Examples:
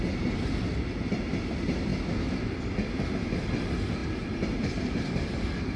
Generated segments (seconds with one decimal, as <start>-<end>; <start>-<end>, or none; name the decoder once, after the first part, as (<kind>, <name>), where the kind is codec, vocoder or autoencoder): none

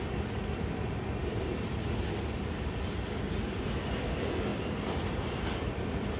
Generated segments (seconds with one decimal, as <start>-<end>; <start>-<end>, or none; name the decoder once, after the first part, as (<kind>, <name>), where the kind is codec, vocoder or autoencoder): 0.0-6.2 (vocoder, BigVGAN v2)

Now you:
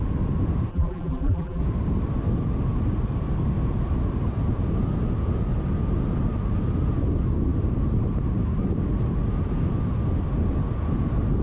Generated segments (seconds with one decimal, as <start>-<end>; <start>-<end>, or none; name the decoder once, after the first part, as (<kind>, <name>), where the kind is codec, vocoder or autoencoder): 0.7-1.6 (vocoder, BigVGAN v2)